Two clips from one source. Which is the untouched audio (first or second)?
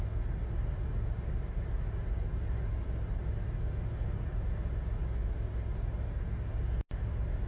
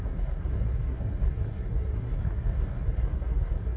first